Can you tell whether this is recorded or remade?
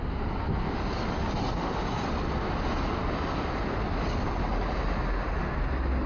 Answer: recorded